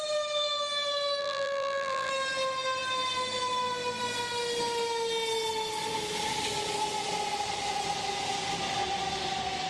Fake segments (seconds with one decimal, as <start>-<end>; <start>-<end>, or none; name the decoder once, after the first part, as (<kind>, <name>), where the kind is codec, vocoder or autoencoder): 1.2-2.1 (vocoder, BigVGAN v2)